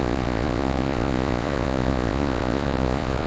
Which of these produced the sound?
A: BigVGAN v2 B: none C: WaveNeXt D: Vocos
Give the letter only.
D